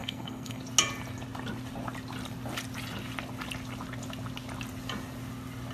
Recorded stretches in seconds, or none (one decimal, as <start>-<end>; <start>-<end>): 0.6-5.7

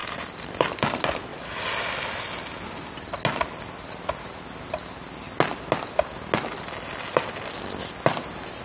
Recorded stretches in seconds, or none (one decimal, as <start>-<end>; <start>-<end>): 0.8-8.6

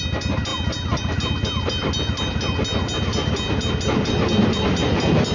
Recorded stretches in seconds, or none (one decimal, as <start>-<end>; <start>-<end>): 0.0-5.3